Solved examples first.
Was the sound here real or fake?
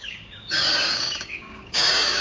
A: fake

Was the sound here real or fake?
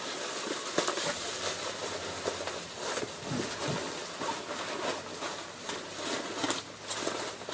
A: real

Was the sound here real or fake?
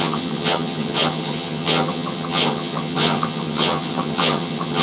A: fake